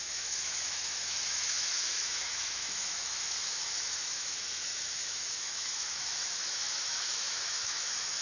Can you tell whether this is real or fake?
fake